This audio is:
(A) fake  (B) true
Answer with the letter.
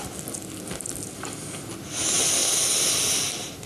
B